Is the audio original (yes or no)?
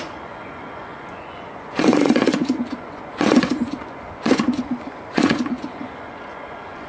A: no